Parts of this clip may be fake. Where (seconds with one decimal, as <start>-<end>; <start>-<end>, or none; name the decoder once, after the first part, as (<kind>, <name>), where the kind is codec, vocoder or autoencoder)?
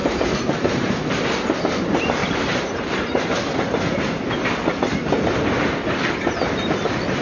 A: 0.0-1.1 (vocoder, BigVGAN v2); 2.2-3.1